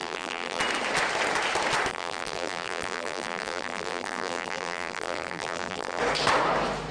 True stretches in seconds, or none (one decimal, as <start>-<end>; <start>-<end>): 0.6-1.9; 6.0-6.9

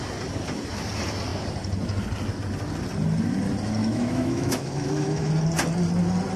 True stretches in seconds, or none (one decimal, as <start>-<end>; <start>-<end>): 0.0-3.8; 5.3-6.4

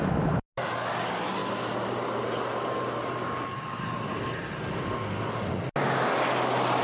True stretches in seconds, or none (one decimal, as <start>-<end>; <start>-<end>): 0.0-6.8

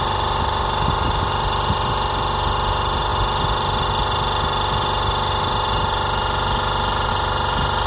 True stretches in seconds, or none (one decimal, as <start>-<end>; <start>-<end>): 0.0-7.9